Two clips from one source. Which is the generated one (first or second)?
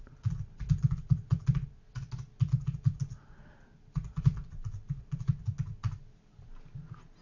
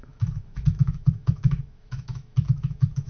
second